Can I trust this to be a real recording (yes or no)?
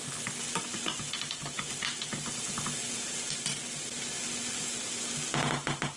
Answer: yes